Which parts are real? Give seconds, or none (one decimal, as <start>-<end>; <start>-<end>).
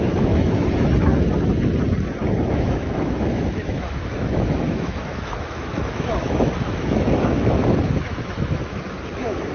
1.1-2.5